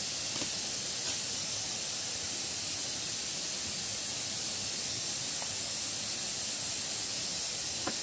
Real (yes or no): yes